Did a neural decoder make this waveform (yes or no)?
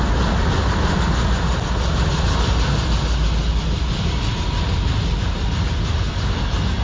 no